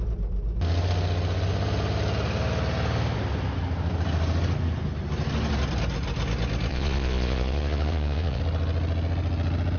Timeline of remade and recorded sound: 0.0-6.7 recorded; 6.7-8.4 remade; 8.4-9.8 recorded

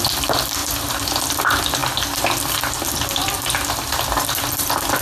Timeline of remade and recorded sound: 0.0-5.0 recorded

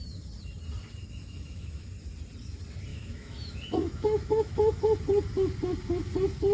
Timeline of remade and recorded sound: 0.0-1.0 recorded; 1.0-1.9 remade; 1.9-2.9 recorded; 2.9-4.8 remade; 4.8-6.5 recorded

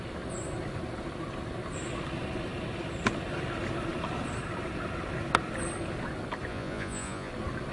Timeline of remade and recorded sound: 0.0-6.5 recorded; 6.5-7.3 remade; 7.3-7.7 recorded